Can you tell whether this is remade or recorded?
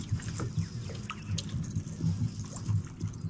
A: recorded